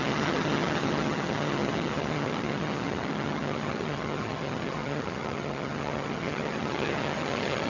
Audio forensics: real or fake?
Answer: fake